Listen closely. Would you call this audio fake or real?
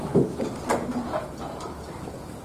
real